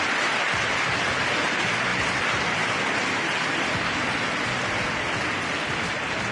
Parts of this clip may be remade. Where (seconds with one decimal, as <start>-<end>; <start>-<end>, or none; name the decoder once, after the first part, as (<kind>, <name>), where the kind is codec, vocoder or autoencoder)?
none

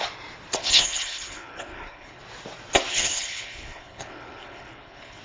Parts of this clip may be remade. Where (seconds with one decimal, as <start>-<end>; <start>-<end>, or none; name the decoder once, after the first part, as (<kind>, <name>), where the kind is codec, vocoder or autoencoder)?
0.6-2.2 (codec, HILCodec); 2.9-5.2

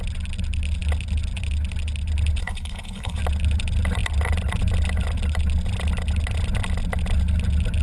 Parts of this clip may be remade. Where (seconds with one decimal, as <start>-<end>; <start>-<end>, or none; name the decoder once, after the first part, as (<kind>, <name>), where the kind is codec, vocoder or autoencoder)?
2.4-3.2 (codec, HILCodec)

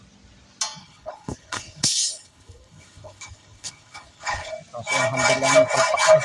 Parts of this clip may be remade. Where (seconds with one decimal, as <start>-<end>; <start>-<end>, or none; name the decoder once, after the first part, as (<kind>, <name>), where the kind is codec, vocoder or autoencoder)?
0.8-4.5 (codec, HILCodec)

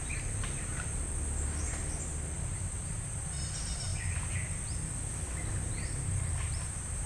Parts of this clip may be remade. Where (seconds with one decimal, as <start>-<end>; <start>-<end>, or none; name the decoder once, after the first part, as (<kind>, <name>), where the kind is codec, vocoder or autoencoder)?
none